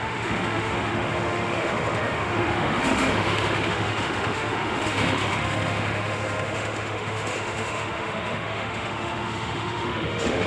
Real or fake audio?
fake